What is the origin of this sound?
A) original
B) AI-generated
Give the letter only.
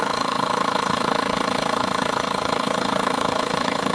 B